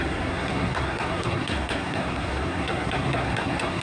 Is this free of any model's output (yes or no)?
no